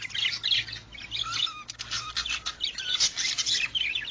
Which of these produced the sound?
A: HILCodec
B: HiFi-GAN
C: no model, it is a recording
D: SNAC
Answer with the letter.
C